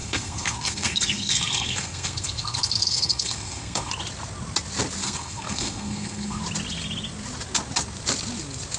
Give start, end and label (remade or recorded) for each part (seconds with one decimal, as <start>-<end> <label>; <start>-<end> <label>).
0.0-3.9 remade; 3.9-5.0 recorded; 5.0-6.4 remade; 6.4-8.8 recorded